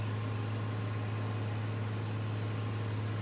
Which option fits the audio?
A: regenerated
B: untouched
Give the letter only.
B